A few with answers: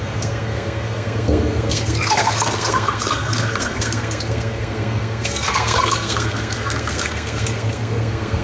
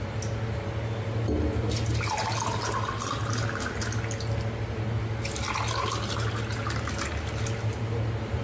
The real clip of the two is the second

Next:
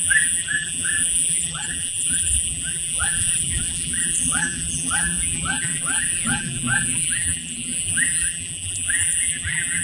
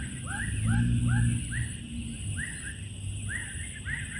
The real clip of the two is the second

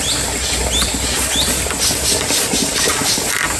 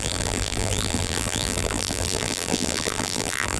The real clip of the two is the first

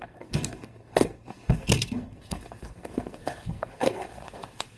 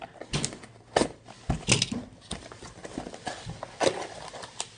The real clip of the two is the second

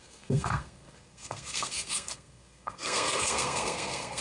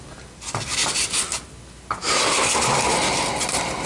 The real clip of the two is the second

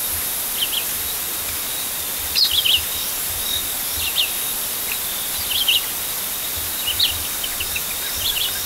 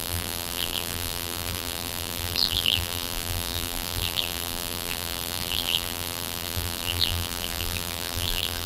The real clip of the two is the first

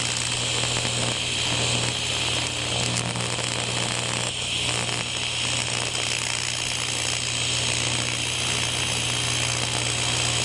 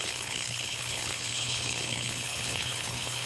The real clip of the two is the first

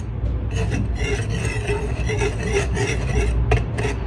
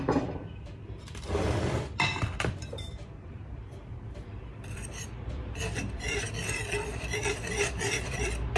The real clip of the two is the first